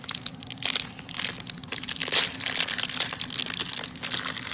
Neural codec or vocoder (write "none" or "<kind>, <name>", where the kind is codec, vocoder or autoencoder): none